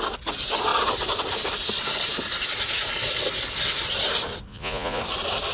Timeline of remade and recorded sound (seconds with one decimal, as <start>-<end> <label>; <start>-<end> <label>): 0.0-4.5 recorded; 4.5-5.0 remade; 5.0-5.5 recorded